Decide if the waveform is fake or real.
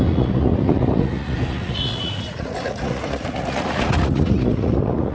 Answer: fake